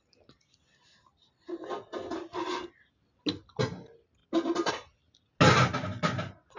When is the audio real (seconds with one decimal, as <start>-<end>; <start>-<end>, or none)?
0.0-6.6